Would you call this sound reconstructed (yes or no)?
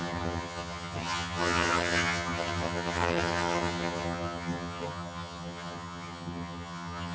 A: yes